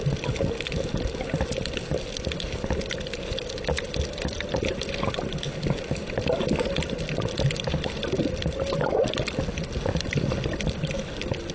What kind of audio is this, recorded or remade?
recorded